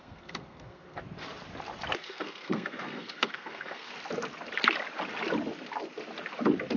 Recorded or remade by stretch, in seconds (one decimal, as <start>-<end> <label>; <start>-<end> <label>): 0.0-1.0 remade; 1.0-2.0 recorded; 2.0-3.9 remade; 3.9-6.8 recorded